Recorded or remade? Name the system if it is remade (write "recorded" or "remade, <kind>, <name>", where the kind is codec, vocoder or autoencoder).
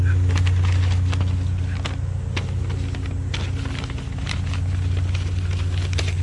recorded